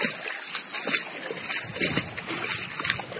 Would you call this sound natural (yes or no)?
yes